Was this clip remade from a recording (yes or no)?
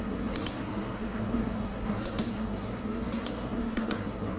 yes